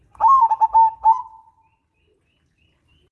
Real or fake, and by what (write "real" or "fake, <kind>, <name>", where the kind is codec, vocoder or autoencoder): real